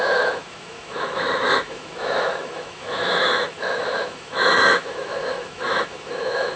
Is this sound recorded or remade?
remade